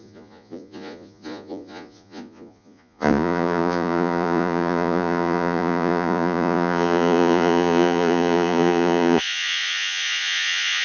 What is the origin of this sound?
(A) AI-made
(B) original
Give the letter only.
A